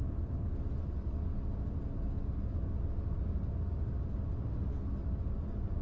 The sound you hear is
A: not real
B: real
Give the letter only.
B